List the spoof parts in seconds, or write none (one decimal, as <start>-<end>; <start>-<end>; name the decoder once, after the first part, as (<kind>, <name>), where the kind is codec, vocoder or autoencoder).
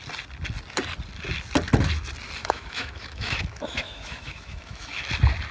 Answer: 2.4-5.1 (autoencoder, DAC-VAE)